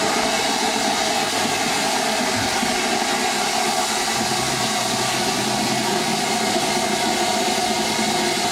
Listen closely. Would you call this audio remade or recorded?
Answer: recorded